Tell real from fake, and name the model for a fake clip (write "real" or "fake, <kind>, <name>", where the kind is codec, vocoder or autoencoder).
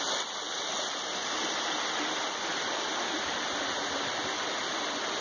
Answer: real